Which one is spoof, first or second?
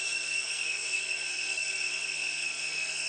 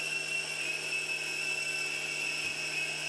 first